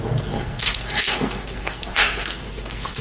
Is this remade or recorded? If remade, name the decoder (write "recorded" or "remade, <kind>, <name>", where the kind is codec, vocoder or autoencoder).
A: remade, codec, SNAC